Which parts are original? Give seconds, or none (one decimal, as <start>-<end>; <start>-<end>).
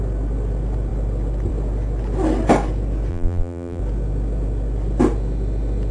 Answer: 0.0-3.1; 3.8-5.9